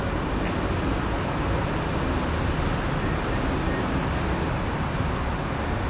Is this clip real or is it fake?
real